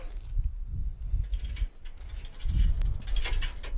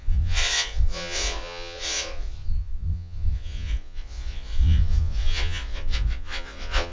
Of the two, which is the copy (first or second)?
second